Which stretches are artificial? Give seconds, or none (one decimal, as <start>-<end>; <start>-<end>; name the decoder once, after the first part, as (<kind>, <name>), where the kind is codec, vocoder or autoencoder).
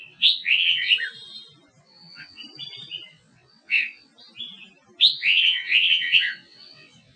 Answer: 0.0-0.9 (vocoder, WaveNeXt); 1.8-2.4; 3.1-4.1; 5.1-7.2